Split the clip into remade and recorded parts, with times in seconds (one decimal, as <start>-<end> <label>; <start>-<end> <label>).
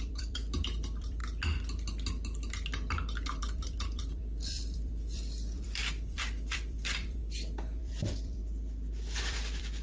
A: 0.0-1.2 remade; 1.2-3.4 recorded; 3.4-7.2 remade; 7.2-7.8 recorded; 7.8-8.4 remade; 8.4-9.2 recorded; 9.2-9.8 remade